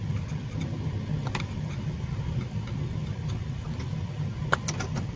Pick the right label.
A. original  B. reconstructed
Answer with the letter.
A